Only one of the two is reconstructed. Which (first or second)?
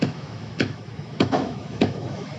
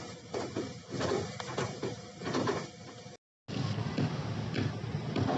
first